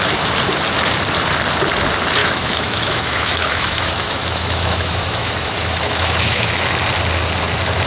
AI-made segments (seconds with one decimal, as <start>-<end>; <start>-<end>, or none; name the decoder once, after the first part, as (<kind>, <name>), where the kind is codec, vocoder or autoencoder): 2.2-6.6 (autoencoder, DAC-VAE)